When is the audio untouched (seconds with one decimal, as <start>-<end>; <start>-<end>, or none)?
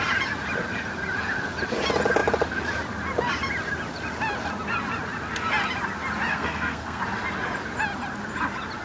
0.0-6.3; 7.0-8.8